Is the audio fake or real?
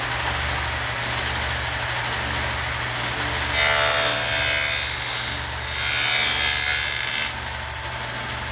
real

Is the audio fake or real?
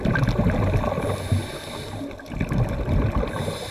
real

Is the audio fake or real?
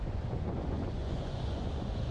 fake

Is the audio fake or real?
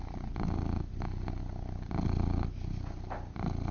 real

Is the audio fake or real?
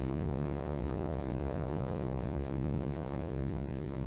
fake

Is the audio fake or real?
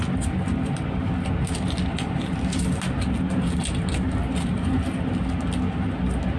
real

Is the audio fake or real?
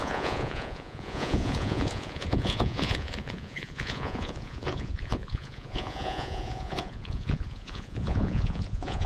fake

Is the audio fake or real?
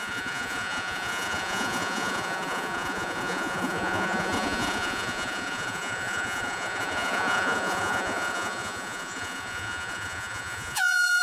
fake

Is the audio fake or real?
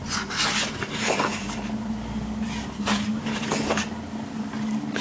real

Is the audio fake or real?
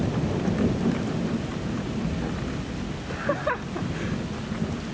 real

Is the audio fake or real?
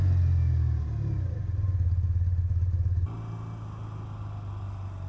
real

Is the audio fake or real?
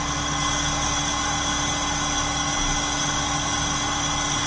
real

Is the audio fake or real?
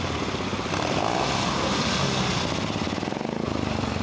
real